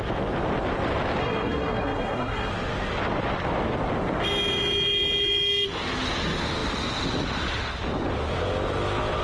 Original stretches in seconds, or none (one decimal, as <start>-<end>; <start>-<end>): 0.0-1.2; 2.5-9.2